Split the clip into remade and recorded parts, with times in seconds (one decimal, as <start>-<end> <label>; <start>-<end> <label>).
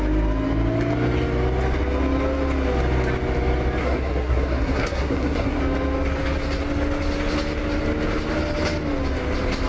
0.0-3.8 recorded; 3.8-5.6 remade; 5.6-9.7 recorded